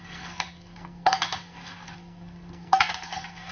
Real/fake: fake